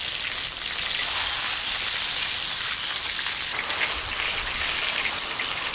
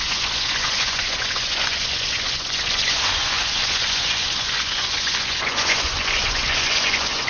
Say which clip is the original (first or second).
first